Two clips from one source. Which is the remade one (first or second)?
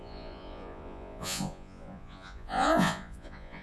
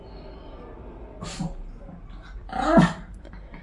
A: first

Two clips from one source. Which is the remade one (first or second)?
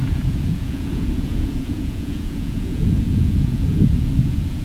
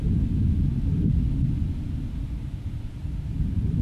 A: first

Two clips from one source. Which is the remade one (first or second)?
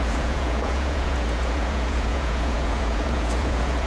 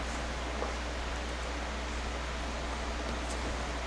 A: first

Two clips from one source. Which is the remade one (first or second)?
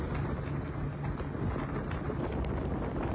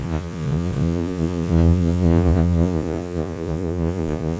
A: second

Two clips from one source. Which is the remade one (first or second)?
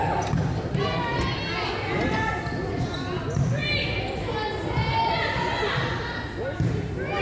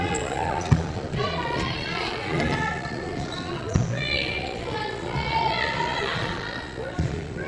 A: second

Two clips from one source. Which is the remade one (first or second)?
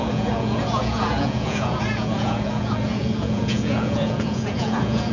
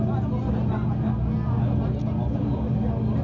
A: first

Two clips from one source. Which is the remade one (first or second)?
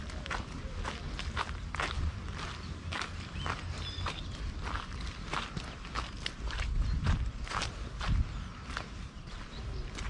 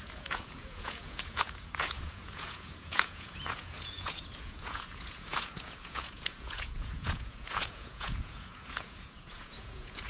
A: second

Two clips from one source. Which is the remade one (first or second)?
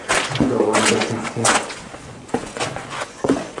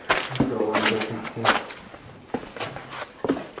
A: first